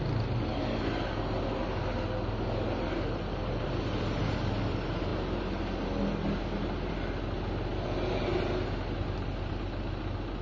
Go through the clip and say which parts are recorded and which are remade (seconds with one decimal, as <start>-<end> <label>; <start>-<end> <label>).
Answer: 0.0-10.4 recorded